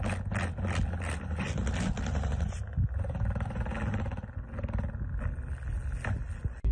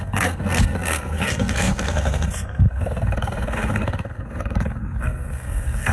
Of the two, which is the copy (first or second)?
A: second